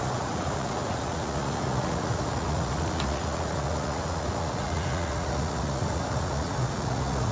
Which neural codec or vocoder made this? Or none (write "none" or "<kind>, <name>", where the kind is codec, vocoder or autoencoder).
vocoder, Vocos